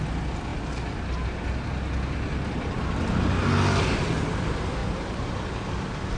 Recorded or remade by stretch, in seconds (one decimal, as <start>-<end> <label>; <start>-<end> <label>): 0.0-4.8 recorded; 4.8-5.7 remade; 5.7-6.2 recorded